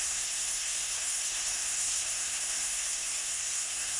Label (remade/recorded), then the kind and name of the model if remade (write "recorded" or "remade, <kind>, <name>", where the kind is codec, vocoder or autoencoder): remade, codec, SNAC